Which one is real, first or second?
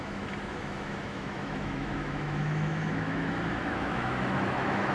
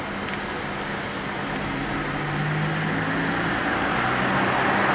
second